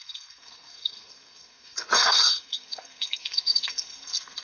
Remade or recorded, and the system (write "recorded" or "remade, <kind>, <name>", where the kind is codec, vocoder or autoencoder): remade, codec, SNAC